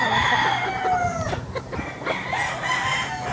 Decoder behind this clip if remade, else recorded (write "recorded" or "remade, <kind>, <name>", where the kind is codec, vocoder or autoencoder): recorded